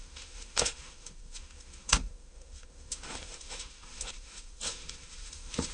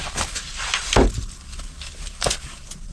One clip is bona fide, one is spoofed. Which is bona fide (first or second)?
second